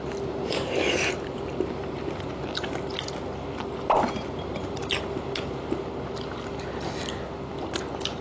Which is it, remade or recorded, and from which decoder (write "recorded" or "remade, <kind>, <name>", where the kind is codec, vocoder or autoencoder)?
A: recorded